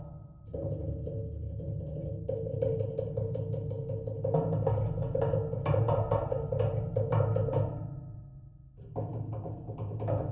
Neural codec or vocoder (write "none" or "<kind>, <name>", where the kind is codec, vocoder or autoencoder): none